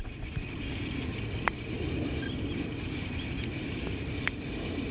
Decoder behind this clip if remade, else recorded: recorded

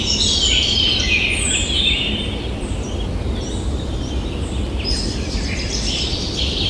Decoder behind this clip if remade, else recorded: recorded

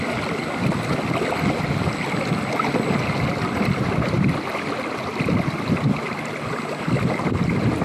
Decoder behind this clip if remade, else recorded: recorded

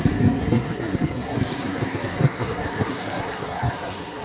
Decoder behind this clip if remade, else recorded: remade, codec, SNAC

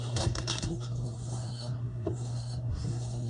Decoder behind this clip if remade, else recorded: remade, codec, SNAC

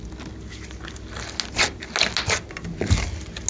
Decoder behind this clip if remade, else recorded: recorded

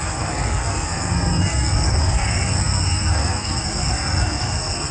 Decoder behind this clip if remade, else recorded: remade, codec, SNAC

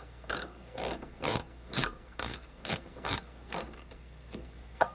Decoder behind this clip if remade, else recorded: remade, codec, SNAC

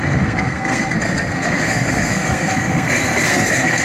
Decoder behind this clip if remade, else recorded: remade, codec, SNAC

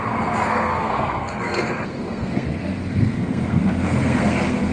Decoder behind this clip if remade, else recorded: remade, codec, SNAC